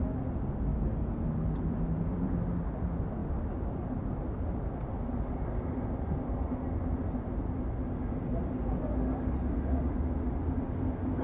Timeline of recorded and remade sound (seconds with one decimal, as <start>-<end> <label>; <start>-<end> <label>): 0.0-11.2 recorded